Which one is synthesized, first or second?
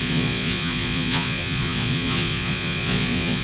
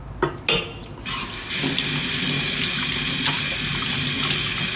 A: first